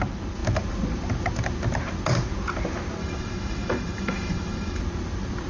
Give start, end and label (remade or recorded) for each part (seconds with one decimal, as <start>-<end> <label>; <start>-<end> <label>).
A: 0.0-3.0 recorded; 3.0-4.8 remade; 4.8-5.5 recorded